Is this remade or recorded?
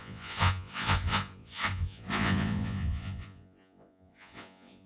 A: remade